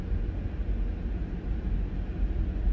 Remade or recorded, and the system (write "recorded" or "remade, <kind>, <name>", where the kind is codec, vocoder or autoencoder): recorded